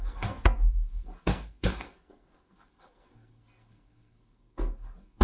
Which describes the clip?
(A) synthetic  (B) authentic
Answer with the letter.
A